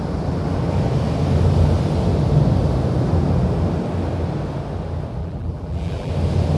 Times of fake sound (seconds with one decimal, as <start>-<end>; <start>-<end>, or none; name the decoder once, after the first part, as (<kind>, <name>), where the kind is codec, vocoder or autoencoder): 5.2-6.1 (vocoder, BigVGAN v2)